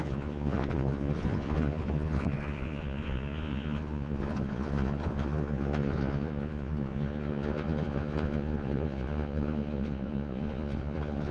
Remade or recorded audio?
remade